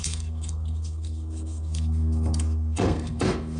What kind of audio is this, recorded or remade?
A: remade